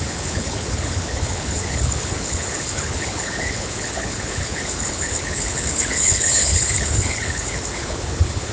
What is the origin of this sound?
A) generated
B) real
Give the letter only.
A